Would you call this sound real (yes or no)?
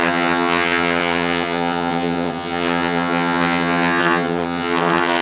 no